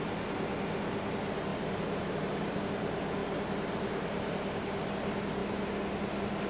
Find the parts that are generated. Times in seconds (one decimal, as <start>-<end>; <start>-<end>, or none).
1.5-2.6; 3.2-4.7